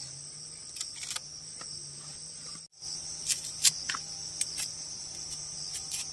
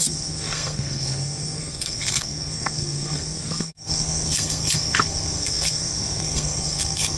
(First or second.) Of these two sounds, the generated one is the second